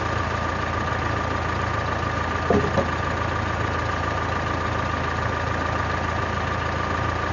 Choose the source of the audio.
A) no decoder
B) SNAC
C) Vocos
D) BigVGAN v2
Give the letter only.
A